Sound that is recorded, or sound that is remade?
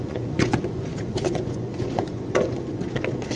remade